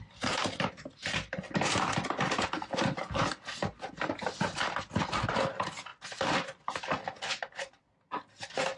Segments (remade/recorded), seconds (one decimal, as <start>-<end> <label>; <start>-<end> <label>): 0.0-8.8 recorded